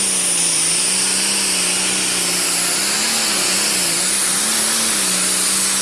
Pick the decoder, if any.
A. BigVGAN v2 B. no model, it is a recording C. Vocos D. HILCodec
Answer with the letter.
B